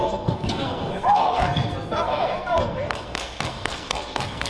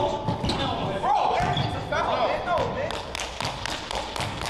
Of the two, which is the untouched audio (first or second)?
second